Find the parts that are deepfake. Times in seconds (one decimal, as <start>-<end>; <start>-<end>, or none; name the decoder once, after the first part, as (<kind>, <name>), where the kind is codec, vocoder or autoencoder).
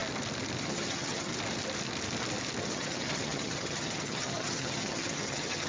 0.6-1.3 (vocoder, HiFi-GAN); 2.6-5.7